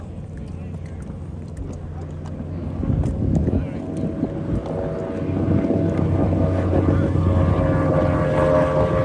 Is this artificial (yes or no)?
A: no